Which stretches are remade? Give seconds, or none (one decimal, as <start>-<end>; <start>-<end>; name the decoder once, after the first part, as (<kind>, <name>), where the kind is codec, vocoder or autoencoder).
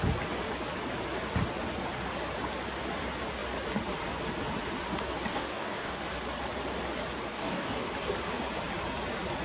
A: 5.3-6.0 (codec, DAC); 7.3-7.9